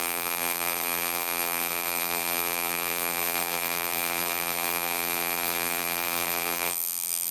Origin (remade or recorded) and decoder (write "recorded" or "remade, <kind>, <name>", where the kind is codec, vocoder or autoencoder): remade, vocoder, BigVGAN v2